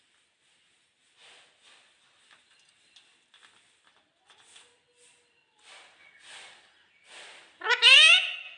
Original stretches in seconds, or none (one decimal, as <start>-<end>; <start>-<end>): 0.0-8.6